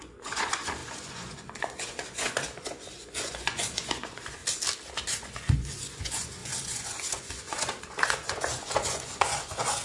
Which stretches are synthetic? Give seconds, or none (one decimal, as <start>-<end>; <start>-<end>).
0.0-4.4; 5.1-9.8